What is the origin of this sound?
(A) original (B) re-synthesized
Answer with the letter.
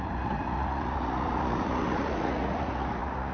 B